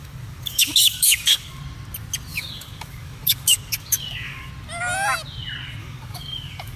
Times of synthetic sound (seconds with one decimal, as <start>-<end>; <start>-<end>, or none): 0.0-1.6; 2.3-4.5; 5.8-6.8